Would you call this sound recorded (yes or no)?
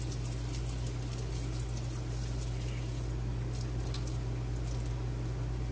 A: yes